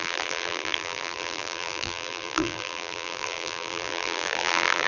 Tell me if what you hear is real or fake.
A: fake